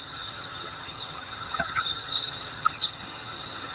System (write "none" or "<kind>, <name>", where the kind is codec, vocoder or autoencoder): vocoder, HiFi-GAN